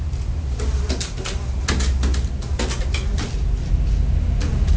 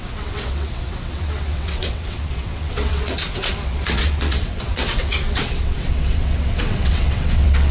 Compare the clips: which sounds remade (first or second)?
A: second